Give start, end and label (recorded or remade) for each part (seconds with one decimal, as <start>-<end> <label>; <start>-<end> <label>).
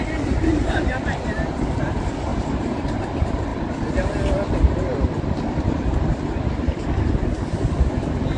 0.0-2.3 recorded; 2.3-3.0 remade; 3.0-8.4 recorded